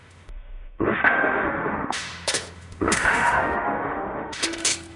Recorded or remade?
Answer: remade